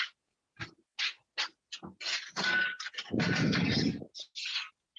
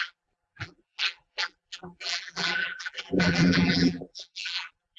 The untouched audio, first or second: first